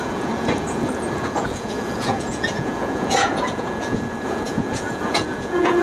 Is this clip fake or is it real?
fake